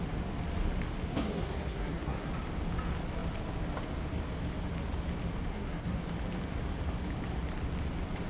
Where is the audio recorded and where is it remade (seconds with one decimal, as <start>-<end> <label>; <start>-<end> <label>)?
0.0-1.1 recorded; 1.1-2.3 remade; 2.3-5.5 recorded; 5.5-6.0 remade; 6.0-8.3 recorded